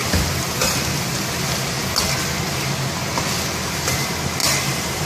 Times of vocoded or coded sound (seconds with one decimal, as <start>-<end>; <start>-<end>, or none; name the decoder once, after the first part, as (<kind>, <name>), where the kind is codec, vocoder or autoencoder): 4.4-5.1 (vocoder, BigVGAN v2)